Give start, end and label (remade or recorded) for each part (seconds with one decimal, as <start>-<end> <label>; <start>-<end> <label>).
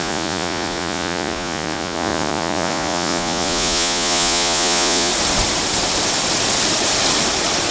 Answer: 0.0-5.1 remade; 5.1-7.7 recorded